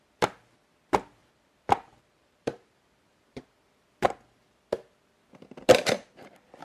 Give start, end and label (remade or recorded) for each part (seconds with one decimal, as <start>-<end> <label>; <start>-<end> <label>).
0.0-1.2 recorded; 1.2-3.4 remade; 3.4-6.6 recorded